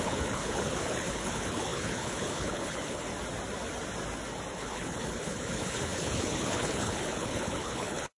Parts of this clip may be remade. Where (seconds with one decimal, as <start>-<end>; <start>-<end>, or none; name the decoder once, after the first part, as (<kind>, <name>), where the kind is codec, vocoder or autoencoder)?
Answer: 0.0-3.1 (codec, HILCodec); 4.5-8.2